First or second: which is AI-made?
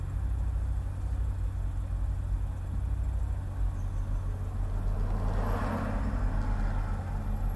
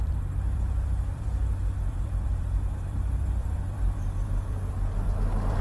second